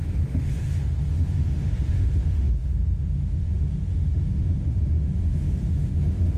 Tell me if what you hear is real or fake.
fake